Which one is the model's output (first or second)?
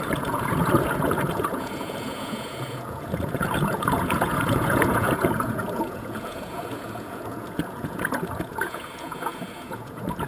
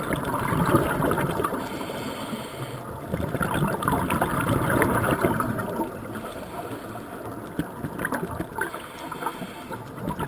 first